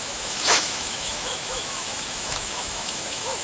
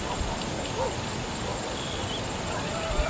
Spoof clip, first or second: first